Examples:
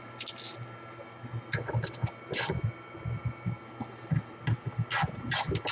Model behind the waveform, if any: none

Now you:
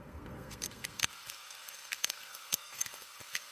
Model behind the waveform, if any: codec, SNAC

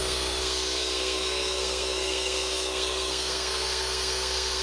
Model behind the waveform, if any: codec, SNAC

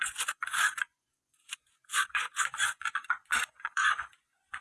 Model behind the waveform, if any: vocoder, Vocos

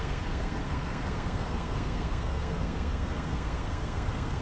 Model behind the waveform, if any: codec, SNAC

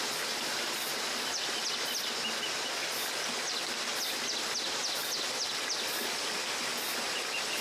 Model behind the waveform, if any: none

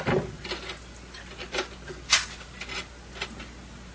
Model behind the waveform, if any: none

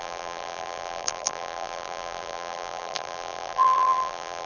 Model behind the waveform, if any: vocoder, BigVGAN v2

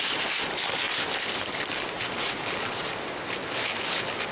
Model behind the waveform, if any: none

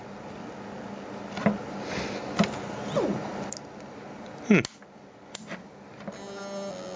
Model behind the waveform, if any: none